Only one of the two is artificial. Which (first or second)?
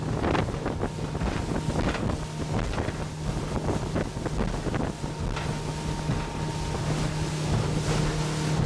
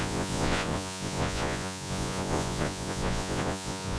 second